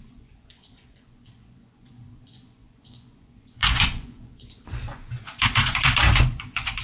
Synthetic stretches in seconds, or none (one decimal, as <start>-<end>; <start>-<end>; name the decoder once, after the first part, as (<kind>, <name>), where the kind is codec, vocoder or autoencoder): 0.0-6.8 (vocoder, Vocos)